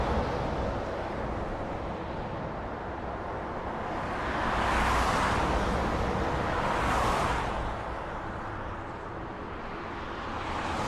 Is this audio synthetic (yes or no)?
no